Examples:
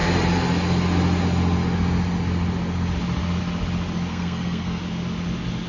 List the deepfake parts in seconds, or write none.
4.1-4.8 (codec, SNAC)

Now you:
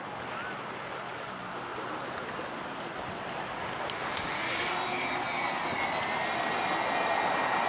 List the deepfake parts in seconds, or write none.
none

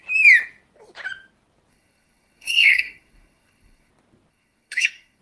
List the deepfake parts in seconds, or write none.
1.7-3.9 (codec, SNAC); 4.3-5.2

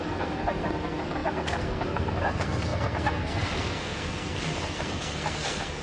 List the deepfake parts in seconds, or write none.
0.0-5.8 (codec, SNAC)

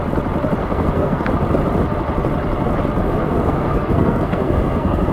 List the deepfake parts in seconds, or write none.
0.6-1.3 (codec, SNAC); 3.0-5.1

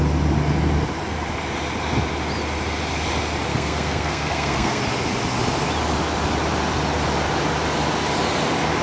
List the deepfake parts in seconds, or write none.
3.5-4.8 (codec, SNAC)

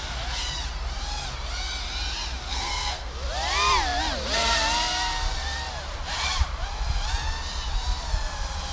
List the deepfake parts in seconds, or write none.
2.5-3.1 (codec, SNAC)